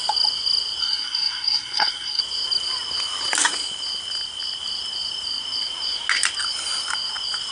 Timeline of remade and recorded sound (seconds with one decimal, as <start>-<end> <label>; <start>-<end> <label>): 0.0-0.8 recorded; 0.8-2.2 remade; 2.2-7.5 recorded